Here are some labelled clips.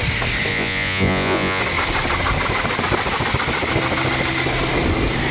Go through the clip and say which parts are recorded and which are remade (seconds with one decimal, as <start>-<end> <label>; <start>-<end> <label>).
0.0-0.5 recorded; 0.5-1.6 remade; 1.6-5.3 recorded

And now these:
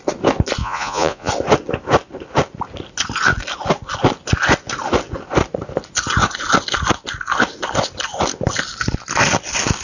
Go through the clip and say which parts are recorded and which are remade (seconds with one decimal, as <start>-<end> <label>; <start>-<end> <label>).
0.0-0.6 recorded; 0.6-1.3 remade; 1.3-9.8 recorded

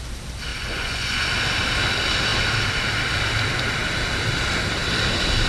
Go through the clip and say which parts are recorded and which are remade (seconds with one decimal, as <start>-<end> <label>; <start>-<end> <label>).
0.0-0.5 recorded; 0.5-1.3 remade; 1.3-5.5 recorded

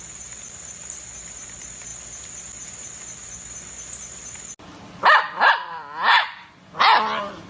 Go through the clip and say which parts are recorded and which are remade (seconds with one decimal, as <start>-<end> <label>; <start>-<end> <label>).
0.0-6.2 recorded; 6.2-6.8 remade; 6.8-7.5 recorded

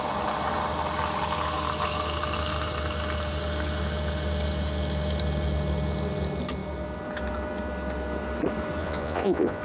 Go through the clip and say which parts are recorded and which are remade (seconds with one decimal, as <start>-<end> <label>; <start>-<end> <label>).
0.0-8.8 recorded; 8.8-9.6 remade